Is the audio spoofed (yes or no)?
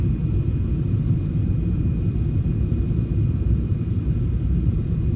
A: yes